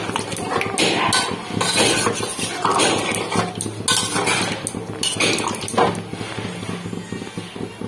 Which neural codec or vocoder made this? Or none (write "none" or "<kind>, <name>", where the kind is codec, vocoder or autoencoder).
none